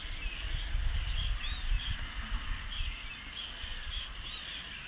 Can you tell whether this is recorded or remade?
recorded